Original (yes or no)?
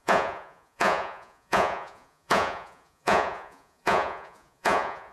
no